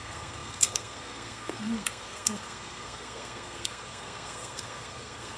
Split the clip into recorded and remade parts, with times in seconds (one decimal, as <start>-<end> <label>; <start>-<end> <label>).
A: 0.0-5.4 remade

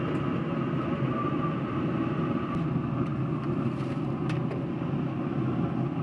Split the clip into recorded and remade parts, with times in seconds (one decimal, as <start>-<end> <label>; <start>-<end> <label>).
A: 0.0-6.0 recorded

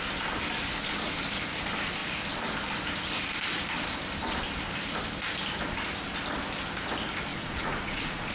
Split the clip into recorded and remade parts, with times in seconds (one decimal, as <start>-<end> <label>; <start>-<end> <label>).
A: 0.0-7.3 recorded; 7.3-8.3 remade

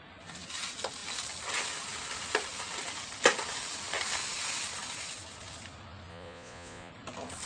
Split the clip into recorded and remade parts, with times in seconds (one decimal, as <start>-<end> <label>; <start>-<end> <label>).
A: 0.0-6.1 recorded; 6.1-6.9 remade; 6.9-7.5 recorded